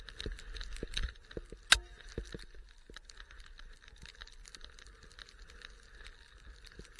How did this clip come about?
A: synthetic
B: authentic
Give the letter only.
B